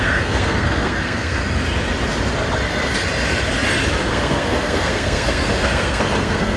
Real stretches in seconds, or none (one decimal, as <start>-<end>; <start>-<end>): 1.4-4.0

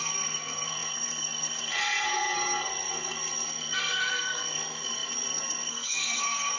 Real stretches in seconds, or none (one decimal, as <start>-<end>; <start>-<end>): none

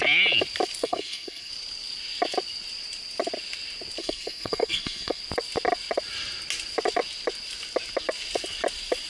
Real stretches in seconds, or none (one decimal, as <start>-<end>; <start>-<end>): 0.0-0.8; 1.5-4.0; 5.2-9.1